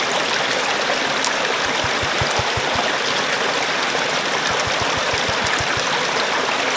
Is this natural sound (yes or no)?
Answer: yes